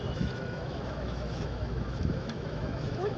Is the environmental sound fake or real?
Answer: fake